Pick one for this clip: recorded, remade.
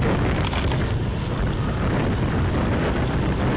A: recorded